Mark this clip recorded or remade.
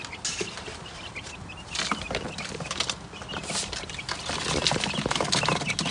recorded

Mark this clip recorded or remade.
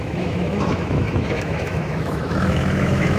remade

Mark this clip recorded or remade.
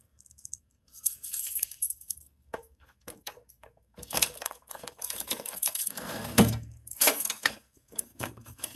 remade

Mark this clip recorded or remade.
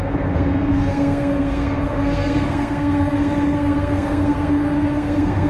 remade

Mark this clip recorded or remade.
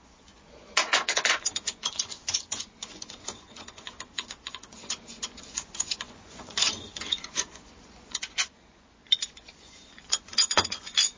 remade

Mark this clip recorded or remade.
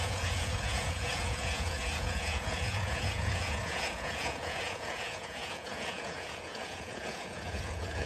remade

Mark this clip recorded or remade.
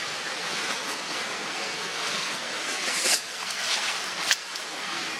remade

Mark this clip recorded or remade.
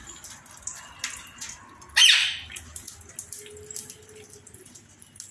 recorded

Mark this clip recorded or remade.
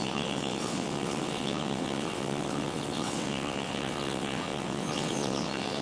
remade